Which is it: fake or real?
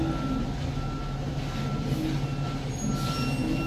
real